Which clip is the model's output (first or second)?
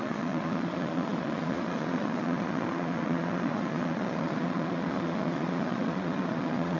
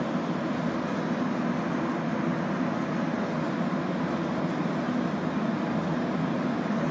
first